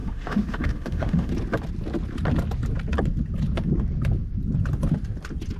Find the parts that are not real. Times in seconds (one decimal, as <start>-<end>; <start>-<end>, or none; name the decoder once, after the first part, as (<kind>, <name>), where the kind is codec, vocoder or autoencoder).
0.0-1.3 (autoencoder, DAC-VAE)